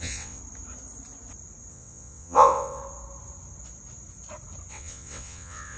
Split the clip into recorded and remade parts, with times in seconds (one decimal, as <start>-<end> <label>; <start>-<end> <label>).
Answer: 0.0-0.4 remade; 0.4-1.7 recorded; 1.7-2.8 remade; 2.8-4.7 recorded; 4.7-5.8 remade